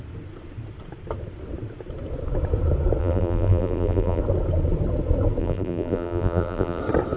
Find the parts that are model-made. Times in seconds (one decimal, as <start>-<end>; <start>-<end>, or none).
3.0-4.2; 5.4-6.8